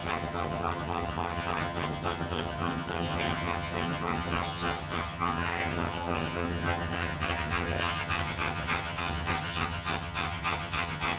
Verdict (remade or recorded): remade